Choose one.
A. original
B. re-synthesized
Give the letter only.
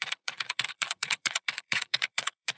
B